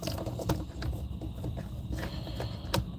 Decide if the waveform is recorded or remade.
recorded